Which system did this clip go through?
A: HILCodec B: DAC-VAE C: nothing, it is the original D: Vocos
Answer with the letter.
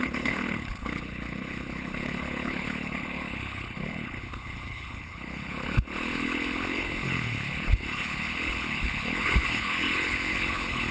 A